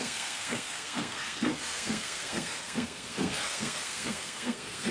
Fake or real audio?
fake